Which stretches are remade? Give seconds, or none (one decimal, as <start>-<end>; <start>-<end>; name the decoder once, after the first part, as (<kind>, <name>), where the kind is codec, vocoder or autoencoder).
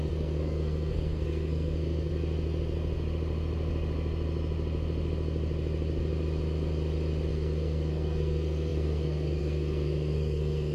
0.0-2.1 (codec, SNAC); 7.3-10.7